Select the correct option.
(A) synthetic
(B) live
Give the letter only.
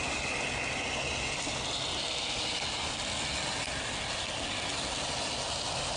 B